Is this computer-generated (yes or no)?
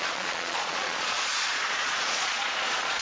yes